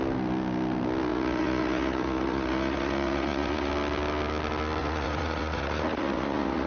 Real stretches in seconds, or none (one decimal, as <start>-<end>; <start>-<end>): 0.0-1.1; 3.7-4.8